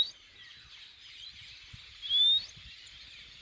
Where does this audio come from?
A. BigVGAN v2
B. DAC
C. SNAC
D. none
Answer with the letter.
D